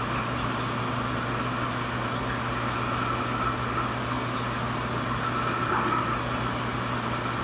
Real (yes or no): yes